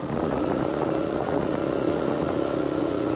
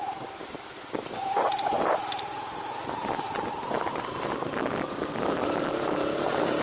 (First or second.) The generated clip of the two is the first